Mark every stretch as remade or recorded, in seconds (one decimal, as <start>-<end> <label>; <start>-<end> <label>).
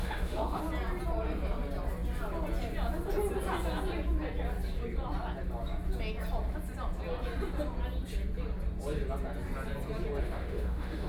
0.0-0.6 remade; 0.6-10.2 recorded; 10.2-11.1 remade